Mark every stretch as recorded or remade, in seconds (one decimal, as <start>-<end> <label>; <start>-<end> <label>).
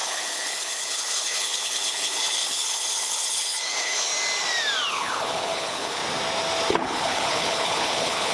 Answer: 0.0-4.1 remade; 4.1-4.9 recorded; 4.9-6.0 remade; 6.0-6.7 recorded; 6.7-8.3 remade